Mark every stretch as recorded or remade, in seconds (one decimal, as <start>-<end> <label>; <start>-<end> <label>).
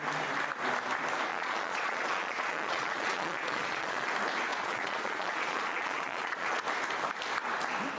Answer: 0.0-1.3 recorded; 1.3-4.1 remade; 4.1-4.5 recorded; 4.5-6.6 remade; 6.6-8.0 recorded